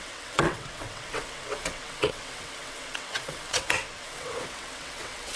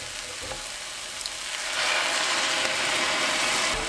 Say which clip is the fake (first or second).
first